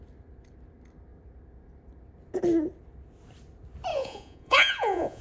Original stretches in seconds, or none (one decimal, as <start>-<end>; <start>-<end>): 0.0-3.9